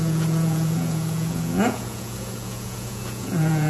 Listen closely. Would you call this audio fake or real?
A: fake